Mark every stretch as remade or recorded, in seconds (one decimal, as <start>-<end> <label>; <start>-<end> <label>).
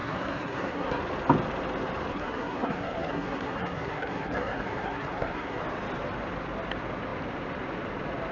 0.0-1.0 remade; 1.0-2.1 recorded; 2.1-5.6 remade; 5.6-8.3 recorded